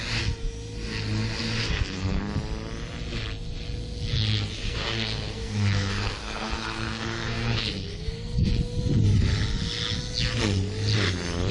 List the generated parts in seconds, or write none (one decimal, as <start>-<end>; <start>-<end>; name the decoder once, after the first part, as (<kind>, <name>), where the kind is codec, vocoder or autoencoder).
1.6-2.2 (codec, SNAC); 4.1-8.5